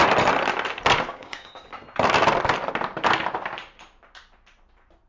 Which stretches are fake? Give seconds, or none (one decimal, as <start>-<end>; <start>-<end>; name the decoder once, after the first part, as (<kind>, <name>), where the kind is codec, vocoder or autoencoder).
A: 1.1-1.7 (codec, DAC)